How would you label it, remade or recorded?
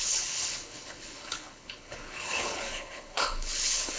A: remade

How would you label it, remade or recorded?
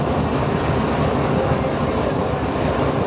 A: recorded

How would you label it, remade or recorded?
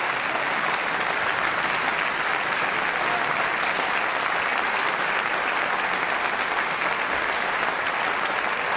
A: recorded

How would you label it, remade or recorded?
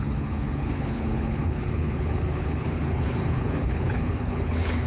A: remade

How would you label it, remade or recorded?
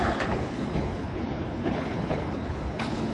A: remade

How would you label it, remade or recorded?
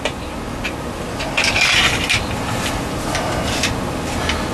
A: recorded